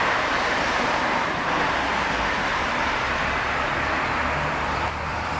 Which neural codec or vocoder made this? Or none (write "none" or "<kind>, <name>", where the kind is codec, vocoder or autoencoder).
vocoder, BigVGAN v2